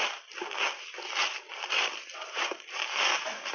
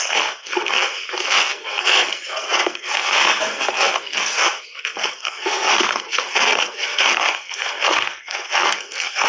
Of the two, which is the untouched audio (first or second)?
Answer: first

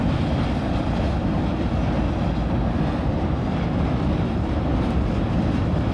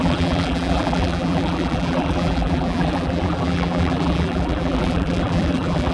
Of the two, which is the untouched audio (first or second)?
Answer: first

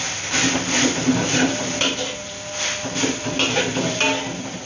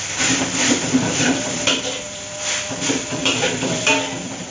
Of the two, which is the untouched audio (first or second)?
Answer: first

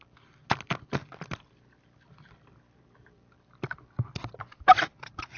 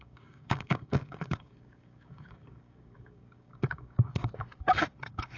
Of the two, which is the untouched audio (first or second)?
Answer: first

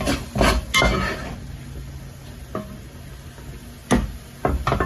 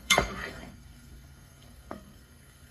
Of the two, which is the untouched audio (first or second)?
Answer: first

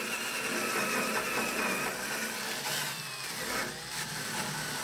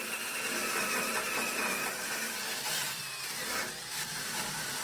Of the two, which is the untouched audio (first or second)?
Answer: first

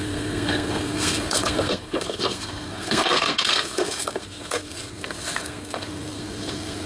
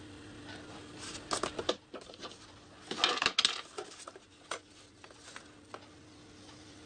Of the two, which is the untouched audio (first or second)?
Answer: second